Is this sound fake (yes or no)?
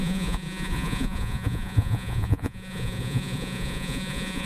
yes